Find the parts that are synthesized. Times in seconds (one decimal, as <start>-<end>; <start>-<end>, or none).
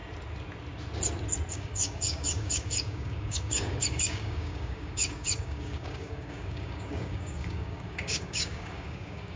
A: 1.5-9.4